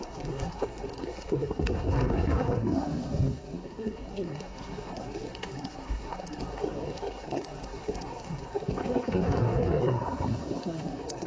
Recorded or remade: remade